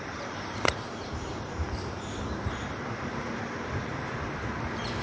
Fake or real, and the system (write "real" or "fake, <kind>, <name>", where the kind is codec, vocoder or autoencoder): fake, vocoder, BigVGAN v2